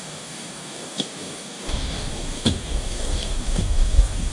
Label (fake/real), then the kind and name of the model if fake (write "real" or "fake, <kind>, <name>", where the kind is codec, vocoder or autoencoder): fake, codec, DAC